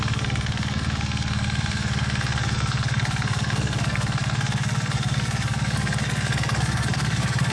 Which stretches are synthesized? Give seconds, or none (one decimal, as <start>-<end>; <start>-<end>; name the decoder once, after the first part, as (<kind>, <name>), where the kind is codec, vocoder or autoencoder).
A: 0.0-7.5 (codec, SNAC)